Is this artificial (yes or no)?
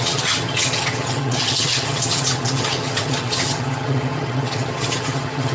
yes